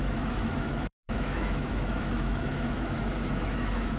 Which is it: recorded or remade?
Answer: remade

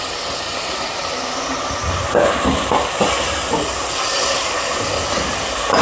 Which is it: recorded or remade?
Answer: recorded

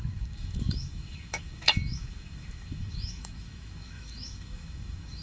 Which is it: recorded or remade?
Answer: remade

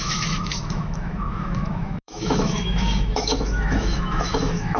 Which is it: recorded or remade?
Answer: remade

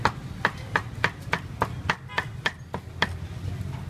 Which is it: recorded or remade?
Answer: recorded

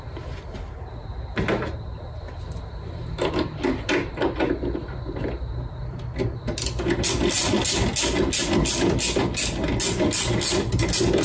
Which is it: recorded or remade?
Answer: recorded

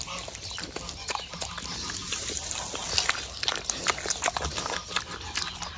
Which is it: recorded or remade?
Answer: recorded